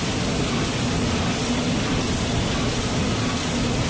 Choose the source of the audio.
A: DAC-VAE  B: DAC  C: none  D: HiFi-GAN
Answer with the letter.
C